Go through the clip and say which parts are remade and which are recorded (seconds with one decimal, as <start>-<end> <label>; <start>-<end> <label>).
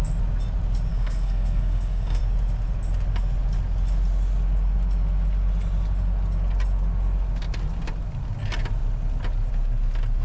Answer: 0.0-0.9 recorded; 0.9-2.2 remade; 2.2-10.2 recorded